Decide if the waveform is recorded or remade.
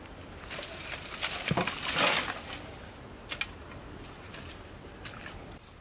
recorded